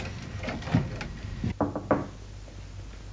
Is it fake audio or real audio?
real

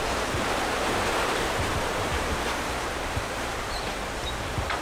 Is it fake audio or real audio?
fake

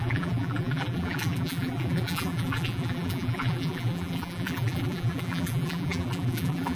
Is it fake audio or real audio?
fake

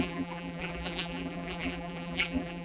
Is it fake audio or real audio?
fake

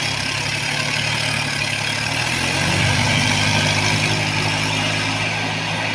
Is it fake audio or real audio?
real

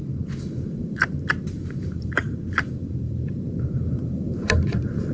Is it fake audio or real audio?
fake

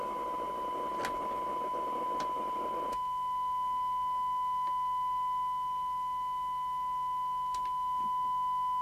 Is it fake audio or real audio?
real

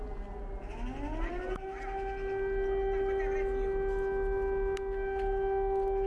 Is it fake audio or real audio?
real